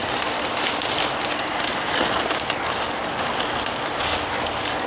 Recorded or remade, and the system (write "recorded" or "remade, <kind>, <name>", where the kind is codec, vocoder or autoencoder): recorded